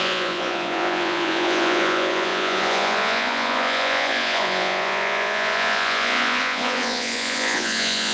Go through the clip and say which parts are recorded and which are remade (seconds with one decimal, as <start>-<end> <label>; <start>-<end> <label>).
0.0-8.1 remade